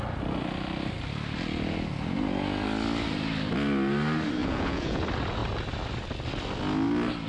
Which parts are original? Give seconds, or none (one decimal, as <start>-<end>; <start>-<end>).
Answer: 0.0-4.4; 5.0-7.3